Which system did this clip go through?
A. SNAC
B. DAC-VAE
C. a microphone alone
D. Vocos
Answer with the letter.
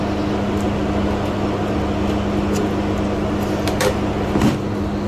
C